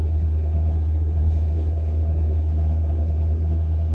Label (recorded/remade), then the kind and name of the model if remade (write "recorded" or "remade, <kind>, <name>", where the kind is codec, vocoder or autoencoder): remade, codec, SNAC